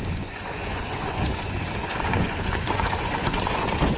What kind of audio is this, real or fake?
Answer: fake